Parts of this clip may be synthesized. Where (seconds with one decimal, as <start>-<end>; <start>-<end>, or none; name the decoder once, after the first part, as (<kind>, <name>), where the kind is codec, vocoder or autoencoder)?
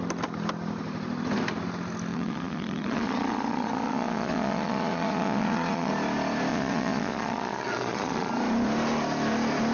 2.1-5.9 (vocoder, Vocos); 6.5-8.3